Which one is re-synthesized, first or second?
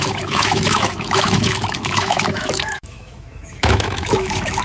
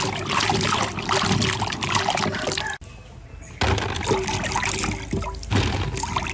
first